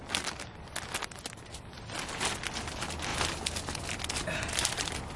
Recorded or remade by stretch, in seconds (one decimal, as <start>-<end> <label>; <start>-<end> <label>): 0.0-5.2 recorded